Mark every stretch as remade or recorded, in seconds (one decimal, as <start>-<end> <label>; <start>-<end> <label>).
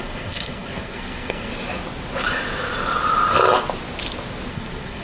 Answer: 0.0-1.5 remade; 1.5-4.5 recorded; 4.5-5.0 remade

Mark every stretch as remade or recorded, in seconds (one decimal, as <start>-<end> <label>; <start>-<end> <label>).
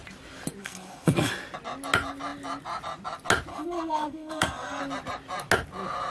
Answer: 0.0-0.6 recorded; 0.6-1.3 remade; 1.3-3.5 recorded; 3.5-4.8 remade; 4.8-6.1 recorded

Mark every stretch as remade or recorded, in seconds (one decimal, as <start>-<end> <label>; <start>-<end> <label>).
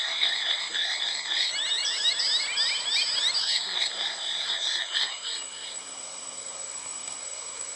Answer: 0.0-1.5 remade; 1.5-3.4 recorded; 3.4-7.8 remade